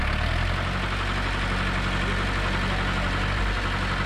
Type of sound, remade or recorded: recorded